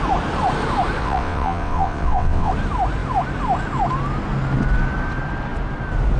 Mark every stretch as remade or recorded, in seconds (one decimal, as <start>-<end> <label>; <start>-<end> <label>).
0.0-1.0 recorded; 1.0-2.5 remade; 2.5-6.2 recorded